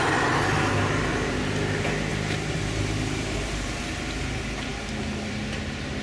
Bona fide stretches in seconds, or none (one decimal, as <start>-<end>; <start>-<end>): 0.0-2.1; 3.8-6.0